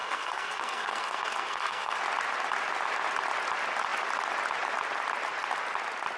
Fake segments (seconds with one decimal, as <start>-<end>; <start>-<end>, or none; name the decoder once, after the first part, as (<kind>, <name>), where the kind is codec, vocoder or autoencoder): 0.0-2.0 (codec, SNAC)